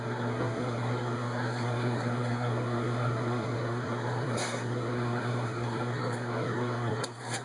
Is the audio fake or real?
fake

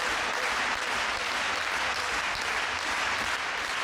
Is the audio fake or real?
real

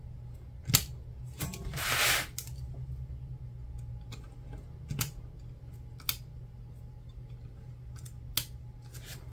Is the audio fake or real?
real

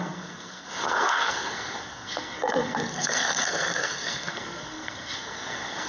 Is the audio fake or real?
fake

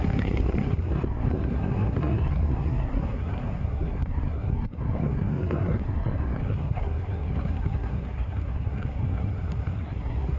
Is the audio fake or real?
fake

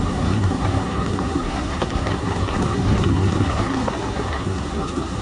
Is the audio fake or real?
fake